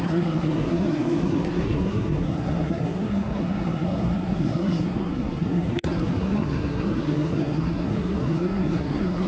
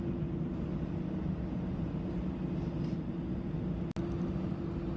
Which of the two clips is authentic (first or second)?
second